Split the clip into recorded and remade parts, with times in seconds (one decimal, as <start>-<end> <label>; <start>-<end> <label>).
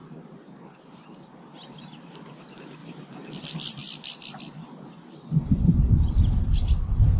0.0-2.8 recorded; 2.8-3.4 remade; 3.4-3.8 recorded; 3.8-6.5 remade; 6.5-7.2 recorded